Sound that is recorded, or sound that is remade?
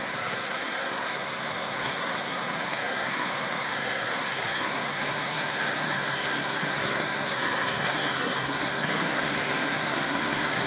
remade